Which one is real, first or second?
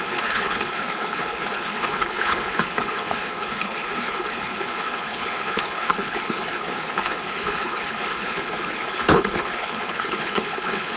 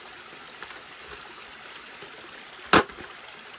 second